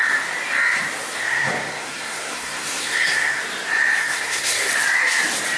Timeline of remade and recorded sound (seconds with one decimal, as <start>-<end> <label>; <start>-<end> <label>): 0.0-1.2 recorded; 1.2-3.4 remade; 3.4-4.0 recorded; 4.0-4.7 remade; 4.7-5.6 recorded